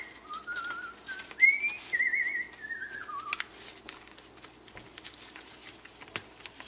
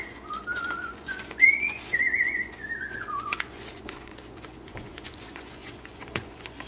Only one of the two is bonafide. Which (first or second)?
first